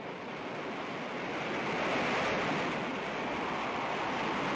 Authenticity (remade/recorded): recorded